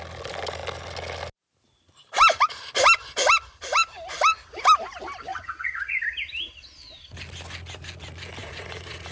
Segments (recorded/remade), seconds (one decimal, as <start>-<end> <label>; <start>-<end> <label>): 0.0-5.3 recorded; 5.3-6.0 remade; 6.0-8.4 recorded; 8.4-9.1 remade